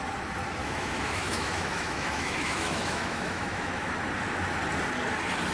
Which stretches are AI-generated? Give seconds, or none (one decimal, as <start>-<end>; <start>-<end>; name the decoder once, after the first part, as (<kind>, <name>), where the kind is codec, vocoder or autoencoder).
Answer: 0.6-3.9 (autoencoder, DAC-VAE)